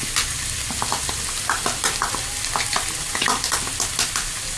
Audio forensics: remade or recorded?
recorded